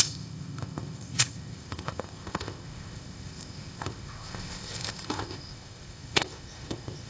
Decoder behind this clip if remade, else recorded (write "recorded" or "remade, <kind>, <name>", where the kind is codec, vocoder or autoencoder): remade, codec, ZipCodec